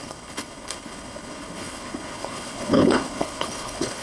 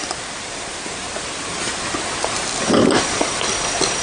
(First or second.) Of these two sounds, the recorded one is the second